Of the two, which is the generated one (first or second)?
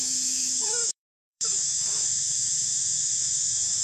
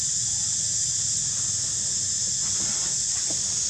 first